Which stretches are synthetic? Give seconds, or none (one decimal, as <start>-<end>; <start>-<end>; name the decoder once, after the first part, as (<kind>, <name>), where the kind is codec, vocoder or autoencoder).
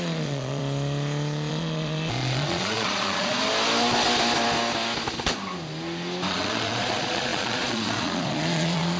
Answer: 0.0-0.6 (vocoder, Vocos); 1.5-3.4; 6.3-9.0